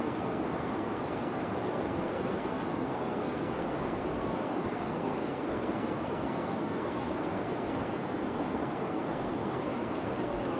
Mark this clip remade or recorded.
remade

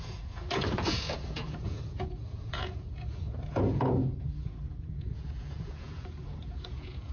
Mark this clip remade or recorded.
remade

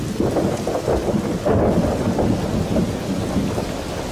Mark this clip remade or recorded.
recorded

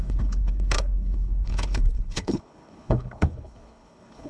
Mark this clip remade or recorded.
remade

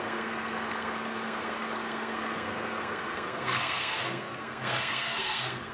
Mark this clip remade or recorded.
remade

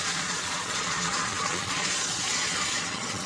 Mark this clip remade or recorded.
remade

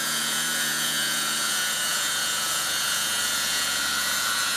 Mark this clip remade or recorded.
remade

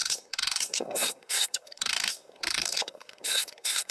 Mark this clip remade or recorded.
remade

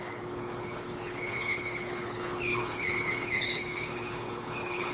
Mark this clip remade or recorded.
remade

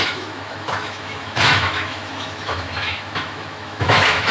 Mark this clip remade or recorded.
remade